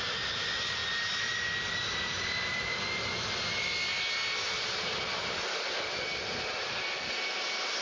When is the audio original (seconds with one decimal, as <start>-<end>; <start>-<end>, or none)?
0.0-7.8

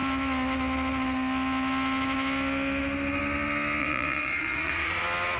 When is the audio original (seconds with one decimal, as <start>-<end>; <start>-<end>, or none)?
0.0-3.8; 5.0-5.4